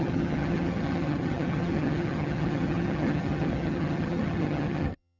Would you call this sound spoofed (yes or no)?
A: yes